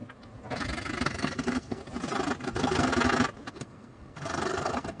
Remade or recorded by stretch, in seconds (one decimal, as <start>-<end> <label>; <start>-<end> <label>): 0.0-1.1 recorded; 1.1-1.8 remade; 1.8-2.4 recorded; 2.4-2.9 remade; 2.9-3.5 recorded; 3.5-5.0 remade